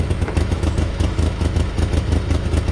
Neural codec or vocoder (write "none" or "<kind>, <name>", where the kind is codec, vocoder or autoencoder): autoencoder, DAC-VAE